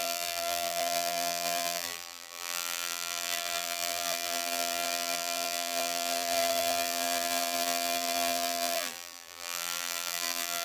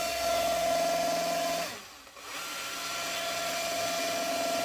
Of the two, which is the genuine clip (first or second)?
second